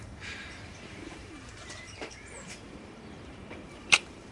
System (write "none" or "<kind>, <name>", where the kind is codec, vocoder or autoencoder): vocoder, BigVGAN v2